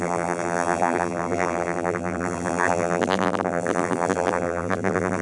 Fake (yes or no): yes